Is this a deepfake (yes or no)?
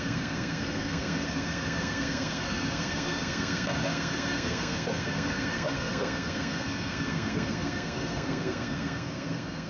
yes